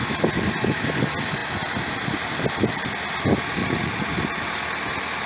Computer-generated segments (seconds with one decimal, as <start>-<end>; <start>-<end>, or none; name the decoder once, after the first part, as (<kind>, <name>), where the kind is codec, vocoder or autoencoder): 3.6-4.1 (vocoder, Vocos)

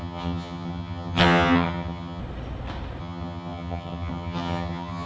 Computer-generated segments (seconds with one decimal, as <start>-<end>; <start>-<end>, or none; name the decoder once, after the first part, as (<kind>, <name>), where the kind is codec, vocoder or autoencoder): 0.0-2.2 (vocoder, HiFi-GAN); 3.0-5.1

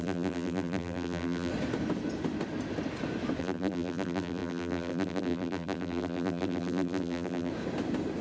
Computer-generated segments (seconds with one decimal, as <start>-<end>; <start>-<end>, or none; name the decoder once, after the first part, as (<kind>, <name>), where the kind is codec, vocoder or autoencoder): 0.0-1.5 (vocoder, BigVGAN v2); 3.4-7.5

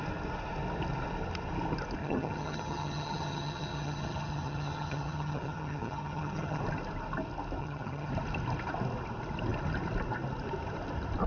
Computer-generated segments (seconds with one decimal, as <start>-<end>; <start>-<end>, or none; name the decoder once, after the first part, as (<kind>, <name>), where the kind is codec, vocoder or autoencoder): 2.0-6.6 (vocoder, HiFi-GAN); 7.6-8.1

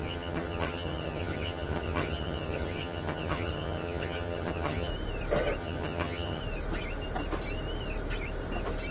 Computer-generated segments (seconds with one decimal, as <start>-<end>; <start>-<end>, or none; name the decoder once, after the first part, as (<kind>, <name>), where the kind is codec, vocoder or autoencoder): 0.0-4.9 (vocoder, HiFi-GAN); 5.6-6.4

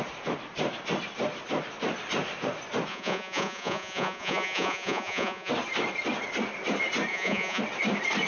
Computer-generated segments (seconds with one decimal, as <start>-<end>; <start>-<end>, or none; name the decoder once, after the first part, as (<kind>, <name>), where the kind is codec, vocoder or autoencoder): 2.9-5.5 (vocoder, Vocos); 7.1-7.6

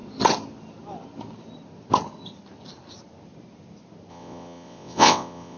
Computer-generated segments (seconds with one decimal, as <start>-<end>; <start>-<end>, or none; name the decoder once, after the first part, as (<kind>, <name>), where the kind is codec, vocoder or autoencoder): 4.1-5.6 (vocoder, WaveNeXt)

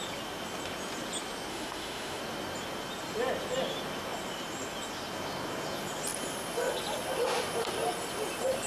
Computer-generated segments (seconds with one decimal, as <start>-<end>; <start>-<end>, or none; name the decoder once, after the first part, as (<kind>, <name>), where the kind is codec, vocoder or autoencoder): 1.5-2.2 (autoencoder, DAC-VAE)